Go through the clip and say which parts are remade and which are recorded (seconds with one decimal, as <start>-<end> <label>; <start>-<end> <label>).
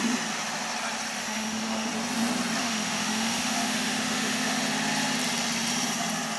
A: 0.0-1.2 recorded; 1.2-1.9 remade; 1.9-2.6 recorded; 2.6-4.6 remade; 4.6-6.4 recorded